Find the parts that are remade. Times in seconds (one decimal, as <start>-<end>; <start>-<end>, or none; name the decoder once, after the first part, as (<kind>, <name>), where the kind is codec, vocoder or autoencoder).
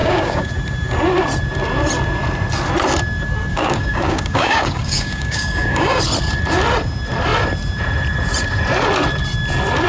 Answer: 0.0-0.5 (codec, DAC); 3.5-6.0